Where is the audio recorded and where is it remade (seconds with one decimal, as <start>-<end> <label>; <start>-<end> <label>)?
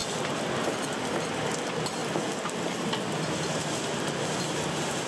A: 0.0-0.9 recorded; 0.9-2.0 remade; 2.0-5.1 recorded